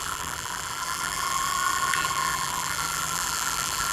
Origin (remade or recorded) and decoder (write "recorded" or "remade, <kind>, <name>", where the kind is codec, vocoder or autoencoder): remade, vocoder, BigVGAN v2